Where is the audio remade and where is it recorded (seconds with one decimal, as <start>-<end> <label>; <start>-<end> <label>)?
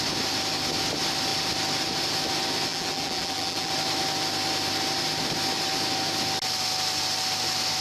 0.0-2.7 recorded; 2.7-3.7 remade; 3.7-7.8 recorded